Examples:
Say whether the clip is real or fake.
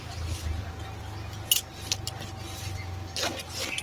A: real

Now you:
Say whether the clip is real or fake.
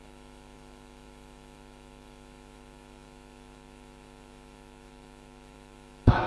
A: fake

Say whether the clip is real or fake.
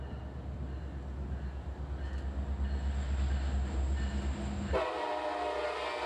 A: real